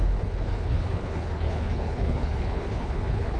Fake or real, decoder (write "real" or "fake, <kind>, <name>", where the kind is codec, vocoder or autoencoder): fake, codec, HILCodec